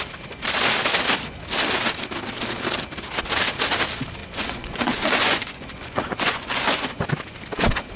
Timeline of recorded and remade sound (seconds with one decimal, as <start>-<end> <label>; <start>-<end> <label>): 0.0-4.2 recorded; 4.2-7.0 remade; 7.0-8.0 recorded